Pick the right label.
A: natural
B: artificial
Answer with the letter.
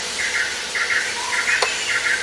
A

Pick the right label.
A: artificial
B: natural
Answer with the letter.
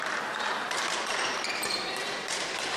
A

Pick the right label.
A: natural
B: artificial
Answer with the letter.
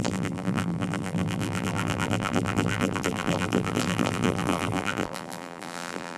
B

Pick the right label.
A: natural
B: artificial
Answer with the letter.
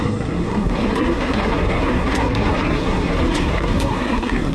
B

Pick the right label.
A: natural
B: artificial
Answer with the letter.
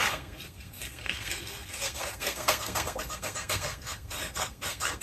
B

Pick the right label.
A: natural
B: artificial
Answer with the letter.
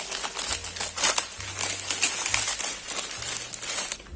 A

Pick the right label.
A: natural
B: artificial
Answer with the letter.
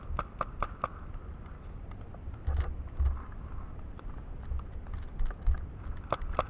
A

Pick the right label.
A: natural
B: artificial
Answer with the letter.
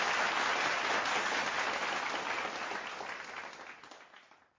A